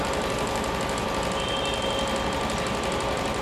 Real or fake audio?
real